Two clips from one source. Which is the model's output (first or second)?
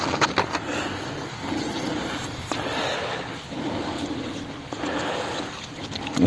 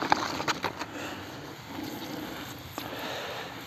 second